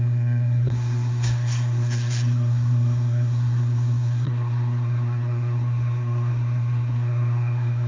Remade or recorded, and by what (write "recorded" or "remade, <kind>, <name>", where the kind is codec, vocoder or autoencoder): remade, codec, SNAC